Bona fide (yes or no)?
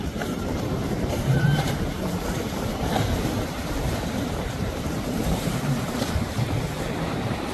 no